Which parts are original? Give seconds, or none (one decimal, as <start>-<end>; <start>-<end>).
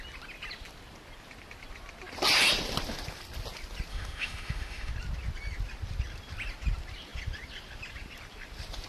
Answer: 0.0-3.9; 4.9-8.9